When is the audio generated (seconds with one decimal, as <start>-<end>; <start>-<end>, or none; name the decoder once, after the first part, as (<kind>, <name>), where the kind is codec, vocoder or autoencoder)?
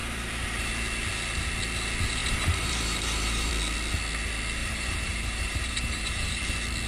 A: 0.0-0.7 (vocoder, BigVGAN v2); 2.2-3.5; 4.6-6.4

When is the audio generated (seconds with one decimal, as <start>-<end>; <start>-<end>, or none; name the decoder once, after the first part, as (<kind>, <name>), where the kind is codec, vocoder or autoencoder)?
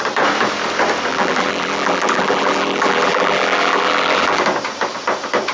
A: 1.1-4.4 (vocoder, BigVGAN v2)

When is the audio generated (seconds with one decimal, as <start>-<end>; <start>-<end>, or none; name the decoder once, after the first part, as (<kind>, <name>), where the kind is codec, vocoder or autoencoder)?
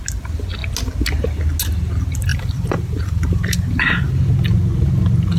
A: 2.3-4.1 (vocoder, BigVGAN v2)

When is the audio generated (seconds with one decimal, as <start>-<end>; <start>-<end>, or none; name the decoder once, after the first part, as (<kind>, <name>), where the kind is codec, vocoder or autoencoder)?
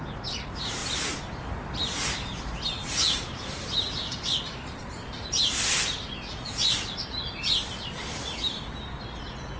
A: 2.3-5.5 (vocoder, BigVGAN v2)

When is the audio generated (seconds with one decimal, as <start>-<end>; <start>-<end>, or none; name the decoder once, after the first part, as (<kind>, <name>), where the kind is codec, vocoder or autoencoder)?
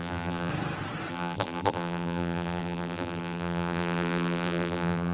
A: 0.0-0.5 (vocoder, BigVGAN v2); 1.1-5.1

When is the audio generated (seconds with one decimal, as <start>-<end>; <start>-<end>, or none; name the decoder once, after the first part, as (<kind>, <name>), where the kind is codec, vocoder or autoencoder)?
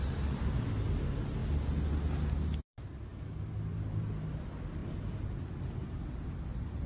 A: 0.0-1.4 (vocoder, BigVGAN v2); 2.6-3.1; 3.7-4.8; 5.7-6.9